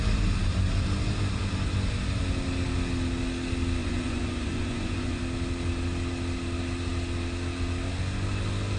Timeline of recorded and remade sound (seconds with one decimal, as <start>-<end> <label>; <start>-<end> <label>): 0.0-3.8 recorded; 3.8-5.2 remade; 5.2-8.8 recorded

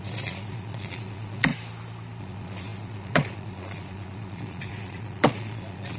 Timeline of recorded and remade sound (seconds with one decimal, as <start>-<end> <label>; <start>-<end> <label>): 0.0-1.5 remade; 1.5-2.2 recorded; 2.2-6.0 remade

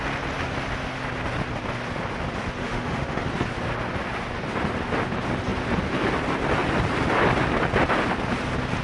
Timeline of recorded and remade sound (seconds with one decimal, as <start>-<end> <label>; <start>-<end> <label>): 0.0-2.6 recorded; 2.6-3.2 remade; 3.2-8.8 recorded

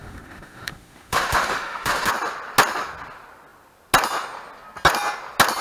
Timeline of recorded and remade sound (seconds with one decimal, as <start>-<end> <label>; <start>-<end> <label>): 0.0-2.1 remade; 2.1-5.6 recorded

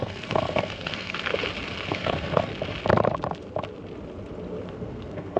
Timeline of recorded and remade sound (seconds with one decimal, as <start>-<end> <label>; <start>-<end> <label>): 0.0-1.3 remade; 1.3-1.9 recorded; 1.9-2.5 remade; 2.5-4.7 recorded; 4.7-5.4 remade

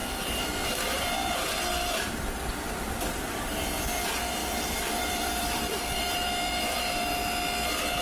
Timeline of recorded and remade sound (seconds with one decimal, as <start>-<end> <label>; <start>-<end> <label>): 0.0-1.5 remade; 1.5-4.4 recorded; 4.4-7.1 remade; 7.1-8.0 recorded